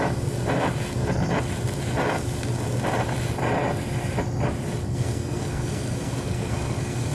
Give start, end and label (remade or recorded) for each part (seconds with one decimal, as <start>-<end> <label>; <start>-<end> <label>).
0.0-4.8 recorded; 4.8-7.1 remade